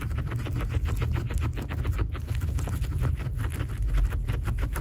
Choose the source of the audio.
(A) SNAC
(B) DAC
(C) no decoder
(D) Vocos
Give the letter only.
C